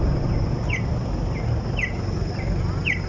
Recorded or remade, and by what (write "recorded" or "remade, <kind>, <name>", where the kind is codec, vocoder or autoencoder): recorded